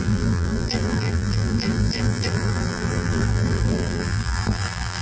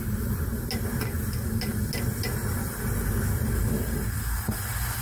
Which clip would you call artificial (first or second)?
first